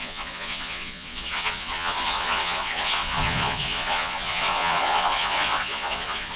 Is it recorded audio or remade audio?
remade